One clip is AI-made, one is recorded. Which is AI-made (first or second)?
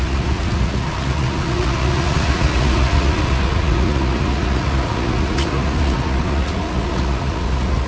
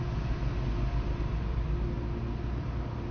first